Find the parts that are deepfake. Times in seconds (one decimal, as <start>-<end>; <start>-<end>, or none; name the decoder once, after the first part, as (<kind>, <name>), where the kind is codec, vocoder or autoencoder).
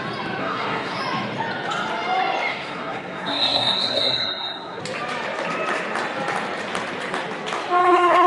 0.4-1.0 (codec, SNAC); 2.5-4.8; 7.8-8.3